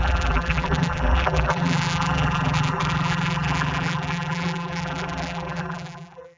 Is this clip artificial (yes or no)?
yes